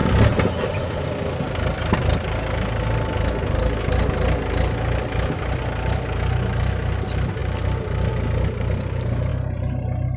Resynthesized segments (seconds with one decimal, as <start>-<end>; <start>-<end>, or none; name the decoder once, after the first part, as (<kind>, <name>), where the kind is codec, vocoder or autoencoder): none